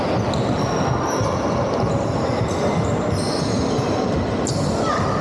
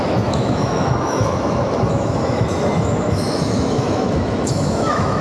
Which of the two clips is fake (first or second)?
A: second